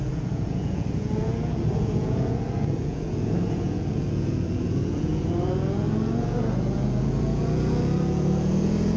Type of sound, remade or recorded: remade